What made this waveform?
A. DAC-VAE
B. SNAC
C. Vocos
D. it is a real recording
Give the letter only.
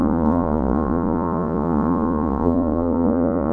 C